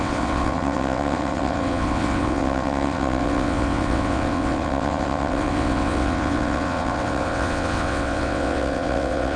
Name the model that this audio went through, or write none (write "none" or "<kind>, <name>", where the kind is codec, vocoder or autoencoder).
vocoder, WaveNeXt